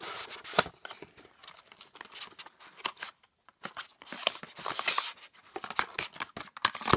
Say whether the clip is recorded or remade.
recorded